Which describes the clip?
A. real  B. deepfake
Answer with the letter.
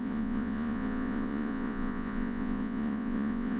B